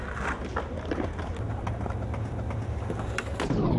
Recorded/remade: recorded